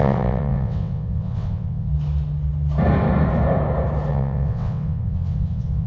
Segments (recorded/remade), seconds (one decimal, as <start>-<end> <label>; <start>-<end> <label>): 0.0-1.9 remade; 1.9-4.1 recorded; 4.1-5.9 remade